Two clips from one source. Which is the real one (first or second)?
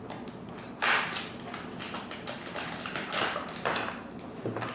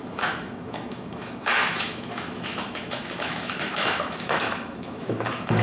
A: first